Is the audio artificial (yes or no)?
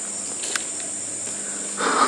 no